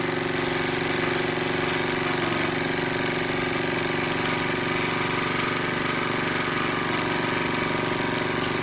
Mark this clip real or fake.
real